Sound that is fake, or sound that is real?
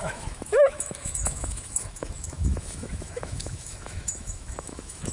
fake